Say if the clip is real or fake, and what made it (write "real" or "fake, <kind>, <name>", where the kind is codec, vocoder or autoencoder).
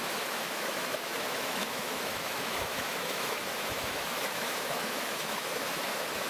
fake, autoencoder, DAC-VAE